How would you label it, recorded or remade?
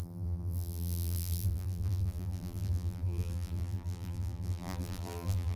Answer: remade